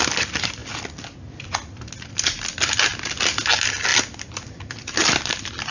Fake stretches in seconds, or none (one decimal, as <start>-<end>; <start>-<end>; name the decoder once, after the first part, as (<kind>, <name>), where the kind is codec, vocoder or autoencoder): none